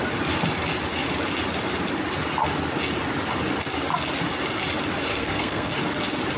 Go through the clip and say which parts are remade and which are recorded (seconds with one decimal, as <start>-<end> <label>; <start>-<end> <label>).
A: 0.0-5.1 recorded; 5.1-5.7 remade; 5.7-6.4 recorded